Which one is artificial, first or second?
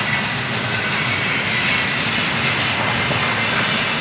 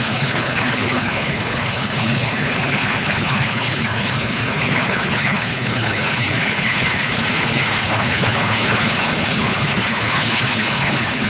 second